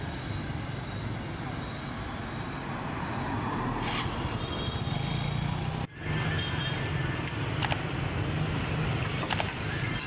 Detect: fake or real real